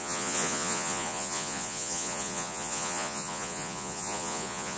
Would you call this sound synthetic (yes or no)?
yes